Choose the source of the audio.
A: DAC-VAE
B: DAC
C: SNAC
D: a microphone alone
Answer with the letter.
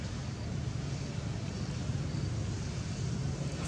D